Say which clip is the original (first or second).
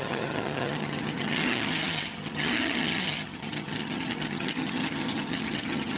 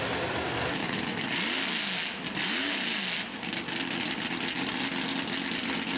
second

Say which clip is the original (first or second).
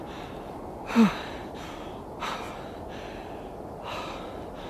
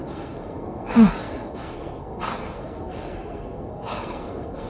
first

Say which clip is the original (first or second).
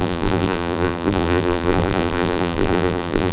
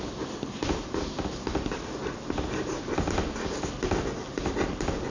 second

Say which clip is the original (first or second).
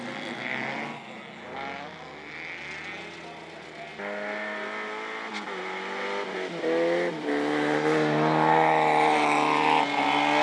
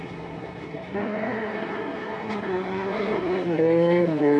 first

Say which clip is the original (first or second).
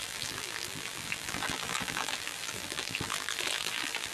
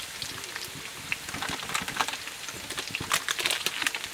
second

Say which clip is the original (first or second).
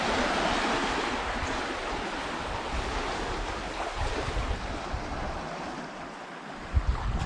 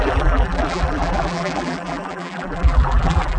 first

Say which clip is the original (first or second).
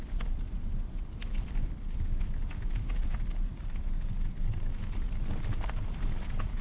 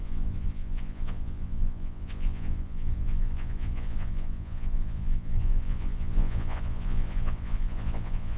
first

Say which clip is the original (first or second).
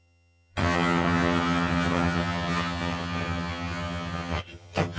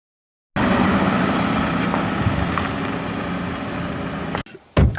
second